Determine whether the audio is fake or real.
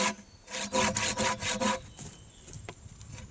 real